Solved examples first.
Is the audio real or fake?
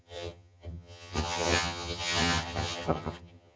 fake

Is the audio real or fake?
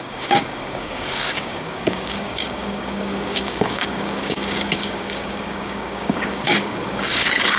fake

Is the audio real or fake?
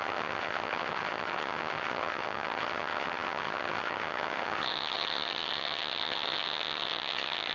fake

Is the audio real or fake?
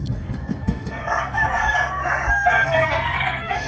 fake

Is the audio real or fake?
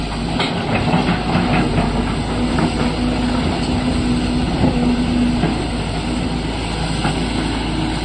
real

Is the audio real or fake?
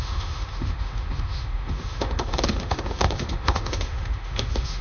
fake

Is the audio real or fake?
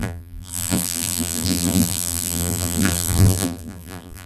fake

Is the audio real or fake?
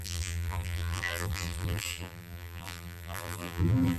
fake